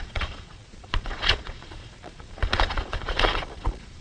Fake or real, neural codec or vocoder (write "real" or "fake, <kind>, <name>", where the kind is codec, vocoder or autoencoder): fake, vocoder, Vocos